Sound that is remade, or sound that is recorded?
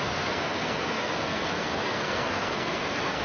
remade